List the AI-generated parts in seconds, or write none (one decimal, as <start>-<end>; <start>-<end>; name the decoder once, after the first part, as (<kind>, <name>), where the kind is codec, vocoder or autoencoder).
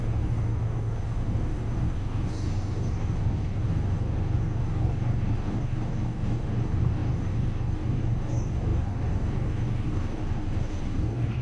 0.0-11.4 (codec, DAC)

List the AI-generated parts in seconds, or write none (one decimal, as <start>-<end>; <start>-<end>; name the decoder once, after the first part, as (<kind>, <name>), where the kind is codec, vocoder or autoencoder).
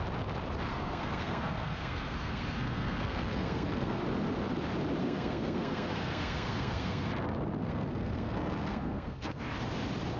0.7-4.0 (codec, SNAC); 5.0-7.1; 7.6-9.4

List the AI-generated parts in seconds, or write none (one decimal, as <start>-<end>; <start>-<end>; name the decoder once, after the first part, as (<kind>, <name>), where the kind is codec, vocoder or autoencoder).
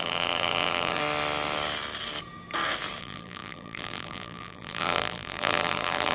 0.0-1.0 (vocoder, BigVGAN v2); 3.0-6.1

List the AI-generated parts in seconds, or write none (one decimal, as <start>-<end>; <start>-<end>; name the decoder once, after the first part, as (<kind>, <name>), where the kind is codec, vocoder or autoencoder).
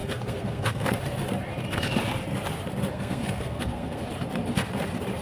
0.0-1.0 (codec, SNAC); 2.9-4.0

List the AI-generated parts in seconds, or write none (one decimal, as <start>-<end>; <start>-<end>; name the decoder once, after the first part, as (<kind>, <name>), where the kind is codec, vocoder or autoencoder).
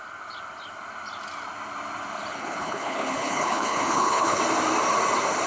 2.3-4.4 (codec, HILCodec)